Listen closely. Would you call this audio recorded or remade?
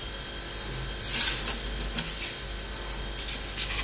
recorded